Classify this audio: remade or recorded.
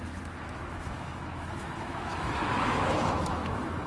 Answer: remade